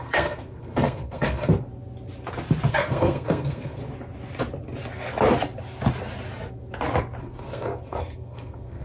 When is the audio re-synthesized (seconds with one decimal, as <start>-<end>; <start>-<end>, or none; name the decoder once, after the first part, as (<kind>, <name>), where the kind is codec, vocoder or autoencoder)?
0.0-1.5 (codec, SNAC); 2.7-3.8; 7.2-8.8